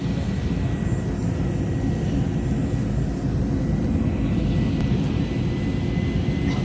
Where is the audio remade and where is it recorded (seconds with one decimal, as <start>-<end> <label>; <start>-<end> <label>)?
0.0-6.6 recorded